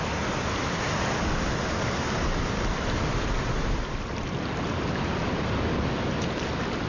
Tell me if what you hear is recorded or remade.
recorded